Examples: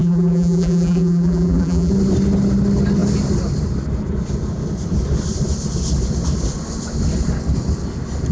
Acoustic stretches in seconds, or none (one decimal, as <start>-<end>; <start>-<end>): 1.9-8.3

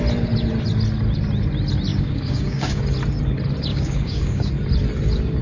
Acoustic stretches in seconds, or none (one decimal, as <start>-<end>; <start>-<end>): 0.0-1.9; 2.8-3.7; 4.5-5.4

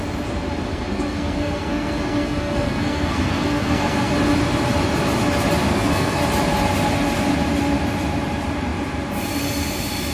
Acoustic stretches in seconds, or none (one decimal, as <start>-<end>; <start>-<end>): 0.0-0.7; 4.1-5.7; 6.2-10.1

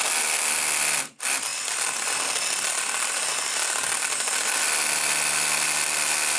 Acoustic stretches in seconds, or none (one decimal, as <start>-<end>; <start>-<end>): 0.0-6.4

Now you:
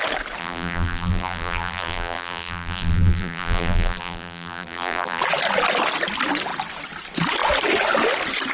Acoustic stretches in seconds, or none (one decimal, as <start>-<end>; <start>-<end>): 0.0-0.4; 5.2-8.5

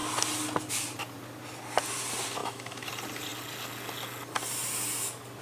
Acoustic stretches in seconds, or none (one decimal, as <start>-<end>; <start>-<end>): 0.0-2.4; 2.9-5.4

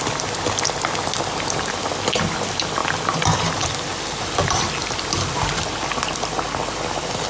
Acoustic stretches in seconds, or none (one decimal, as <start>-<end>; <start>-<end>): 0.0-7.3